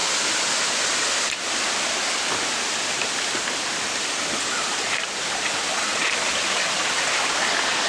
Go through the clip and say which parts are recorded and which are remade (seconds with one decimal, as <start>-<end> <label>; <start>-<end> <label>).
0.0-7.9 recorded